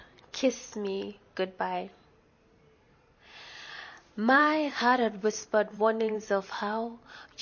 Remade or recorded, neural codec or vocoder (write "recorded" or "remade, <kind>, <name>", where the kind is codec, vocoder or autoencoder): remade, vocoder, BigVGAN v2